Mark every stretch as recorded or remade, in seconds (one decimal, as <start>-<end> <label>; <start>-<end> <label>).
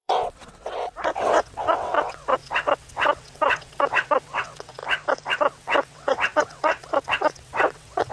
0.0-4.8 remade; 4.8-5.4 recorded; 5.4-8.1 remade